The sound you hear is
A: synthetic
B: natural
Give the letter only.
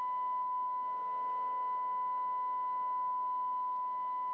B